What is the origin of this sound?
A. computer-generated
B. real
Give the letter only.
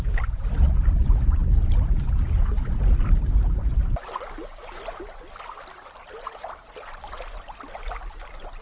B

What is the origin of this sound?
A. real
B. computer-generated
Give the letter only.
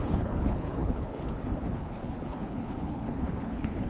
B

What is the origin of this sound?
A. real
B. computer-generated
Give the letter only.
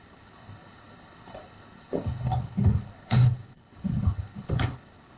B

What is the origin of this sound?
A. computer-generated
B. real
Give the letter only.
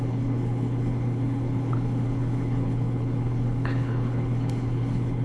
A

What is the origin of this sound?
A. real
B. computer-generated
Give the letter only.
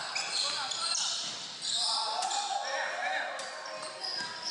A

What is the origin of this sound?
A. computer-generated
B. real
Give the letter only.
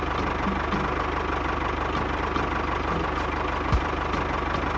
B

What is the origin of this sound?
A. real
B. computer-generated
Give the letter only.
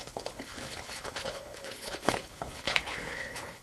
B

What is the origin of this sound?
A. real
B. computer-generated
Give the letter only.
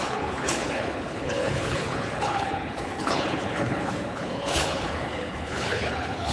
B